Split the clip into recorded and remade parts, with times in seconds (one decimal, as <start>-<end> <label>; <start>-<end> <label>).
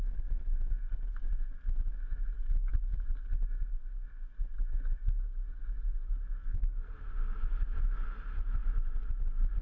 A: 0.0-6.4 recorded; 6.4-6.9 remade; 6.9-9.6 recorded